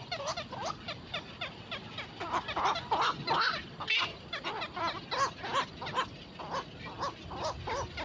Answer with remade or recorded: recorded